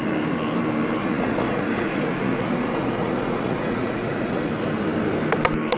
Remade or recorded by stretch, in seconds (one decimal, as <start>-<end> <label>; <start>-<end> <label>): 0.0-1.0 recorded; 1.0-4.5 remade; 4.5-5.8 recorded